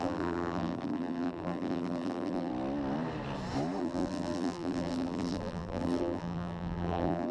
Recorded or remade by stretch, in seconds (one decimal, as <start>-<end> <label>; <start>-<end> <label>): 0.0-2.5 remade; 2.5-3.8 recorded; 3.8-7.3 remade

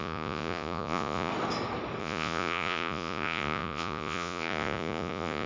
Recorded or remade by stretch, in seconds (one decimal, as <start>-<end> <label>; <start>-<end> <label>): 0.0-1.3 remade; 1.3-2.0 recorded; 2.0-5.5 remade

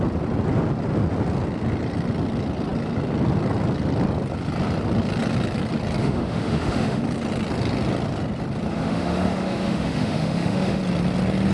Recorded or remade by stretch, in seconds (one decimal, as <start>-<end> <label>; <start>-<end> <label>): 0.0-6.0 recorded; 6.0-7.0 remade; 7.0-8.7 recorded; 8.7-10.8 remade; 10.8-11.5 recorded